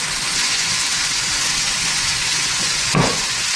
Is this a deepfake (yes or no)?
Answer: yes